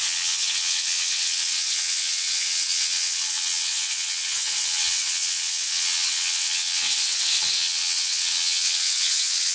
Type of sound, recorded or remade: remade